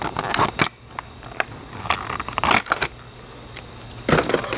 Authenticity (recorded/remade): recorded